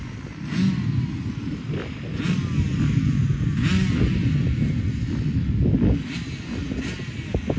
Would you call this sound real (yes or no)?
yes